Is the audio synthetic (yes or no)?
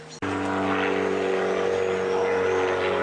no